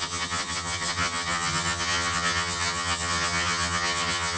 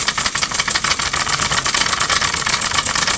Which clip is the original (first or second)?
second